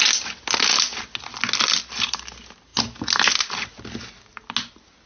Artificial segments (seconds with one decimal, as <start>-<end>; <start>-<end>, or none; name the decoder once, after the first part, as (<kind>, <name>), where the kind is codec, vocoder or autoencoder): none